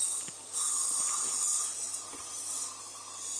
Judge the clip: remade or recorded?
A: recorded